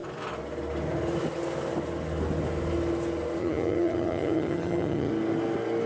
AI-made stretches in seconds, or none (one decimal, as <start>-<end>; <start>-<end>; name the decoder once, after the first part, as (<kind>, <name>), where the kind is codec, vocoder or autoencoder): 3.4-5.1 (vocoder, HiFi-GAN)